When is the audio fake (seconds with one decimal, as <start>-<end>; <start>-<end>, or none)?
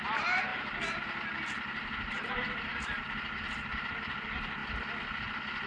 0.0-0.5; 2.1-3.0; 3.9-4.6